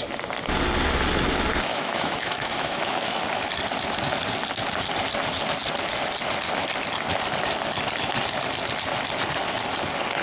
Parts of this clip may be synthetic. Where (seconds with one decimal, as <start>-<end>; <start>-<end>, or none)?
1.7-3.2